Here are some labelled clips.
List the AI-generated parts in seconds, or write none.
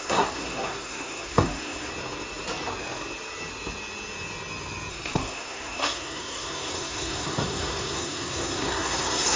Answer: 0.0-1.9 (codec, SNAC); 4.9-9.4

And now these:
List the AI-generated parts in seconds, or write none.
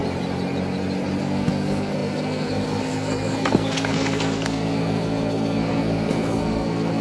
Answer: 1.2-7.0 (codec, SNAC)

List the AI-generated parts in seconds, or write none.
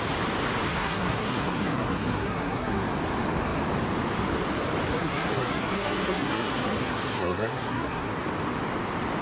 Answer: 0.7-2.8 (codec, SNAC); 4.9-8.1